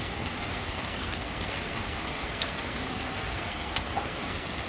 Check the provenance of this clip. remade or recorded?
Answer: remade